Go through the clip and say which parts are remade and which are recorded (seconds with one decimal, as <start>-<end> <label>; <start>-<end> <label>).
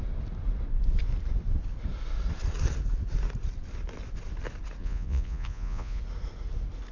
0.0-4.8 recorded; 4.8-6.0 remade; 6.0-6.9 recorded